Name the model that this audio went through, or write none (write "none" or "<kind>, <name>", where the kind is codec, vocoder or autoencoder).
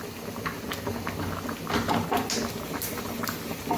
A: none